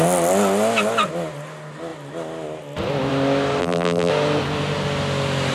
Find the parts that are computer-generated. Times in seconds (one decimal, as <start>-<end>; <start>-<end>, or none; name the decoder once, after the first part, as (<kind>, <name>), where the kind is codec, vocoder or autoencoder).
3.6-4.1 (vocoder, BigVGAN v2)